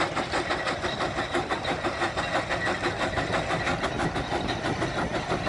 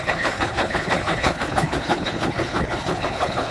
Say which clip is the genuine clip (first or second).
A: first